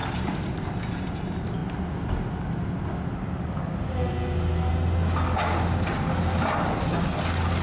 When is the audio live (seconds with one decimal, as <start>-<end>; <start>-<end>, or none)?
1.1-7.6

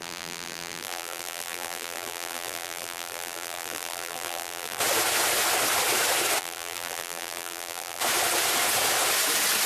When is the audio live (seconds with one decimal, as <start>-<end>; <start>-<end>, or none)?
4.8-6.4; 8.0-9.7

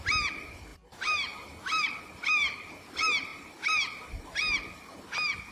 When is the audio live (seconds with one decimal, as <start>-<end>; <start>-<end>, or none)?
0.0-0.7; 2.0-5.5

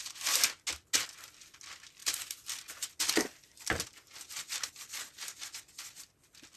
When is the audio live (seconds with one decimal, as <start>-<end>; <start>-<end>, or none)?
0.0-6.6

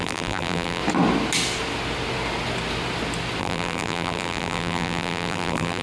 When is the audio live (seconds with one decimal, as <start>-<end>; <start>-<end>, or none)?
0.8-3.4

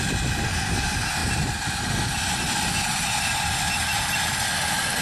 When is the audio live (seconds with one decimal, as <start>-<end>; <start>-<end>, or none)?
0.0-5.0

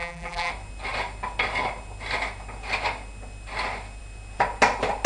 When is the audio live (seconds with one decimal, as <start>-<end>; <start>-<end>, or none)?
0.5-5.1

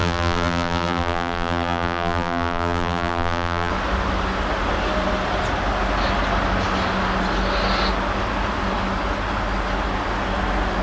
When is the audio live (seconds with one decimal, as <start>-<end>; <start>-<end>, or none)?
3.7-10.8